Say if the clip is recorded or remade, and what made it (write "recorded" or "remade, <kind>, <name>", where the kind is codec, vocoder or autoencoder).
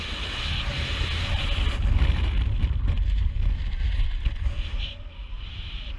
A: recorded